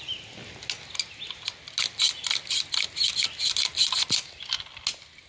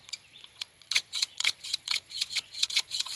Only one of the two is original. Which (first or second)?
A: first